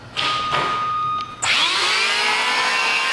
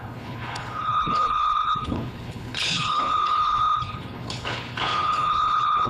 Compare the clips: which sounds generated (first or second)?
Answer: second